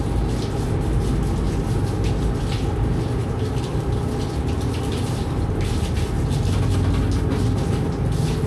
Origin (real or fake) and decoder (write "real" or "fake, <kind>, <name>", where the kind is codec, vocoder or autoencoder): real